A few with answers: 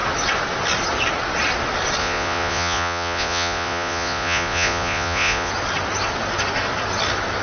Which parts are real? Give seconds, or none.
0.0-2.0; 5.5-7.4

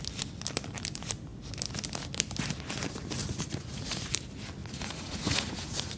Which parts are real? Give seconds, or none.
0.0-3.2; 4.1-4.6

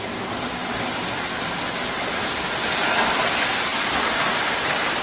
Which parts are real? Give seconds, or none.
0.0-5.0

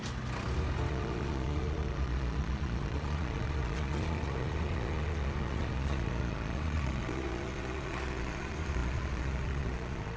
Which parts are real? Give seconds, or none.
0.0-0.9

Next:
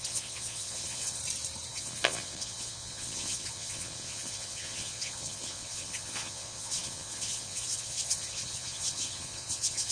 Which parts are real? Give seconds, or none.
1.2-1.7